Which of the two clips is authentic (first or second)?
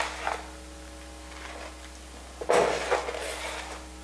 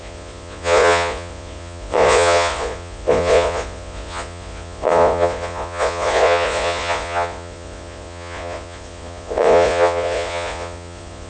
first